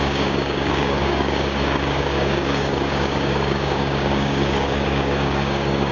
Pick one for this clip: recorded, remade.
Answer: remade